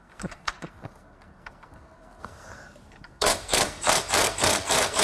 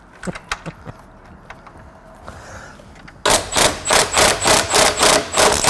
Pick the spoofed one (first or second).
first